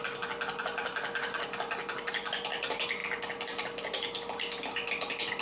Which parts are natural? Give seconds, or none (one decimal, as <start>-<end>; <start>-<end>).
0.0-5.4